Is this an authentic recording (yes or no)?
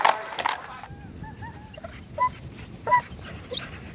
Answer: yes